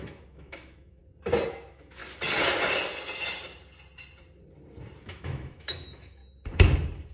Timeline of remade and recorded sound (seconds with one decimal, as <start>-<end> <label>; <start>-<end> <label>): 0.0-1.0 remade; 1.0-1.5 recorded; 1.5-2.0 remade; 2.0-5.0 recorded; 5.0-6.2 remade; 6.2-7.1 recorded